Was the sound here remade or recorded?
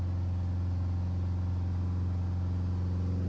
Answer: recorded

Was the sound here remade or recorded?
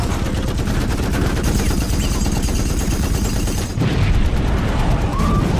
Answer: remade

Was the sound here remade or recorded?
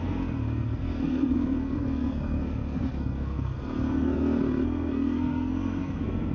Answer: remade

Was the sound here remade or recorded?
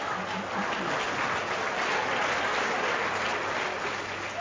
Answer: recorded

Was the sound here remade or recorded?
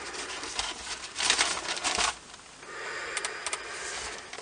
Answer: recorded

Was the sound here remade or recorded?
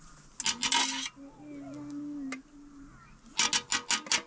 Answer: recorded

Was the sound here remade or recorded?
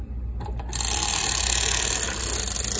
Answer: recorded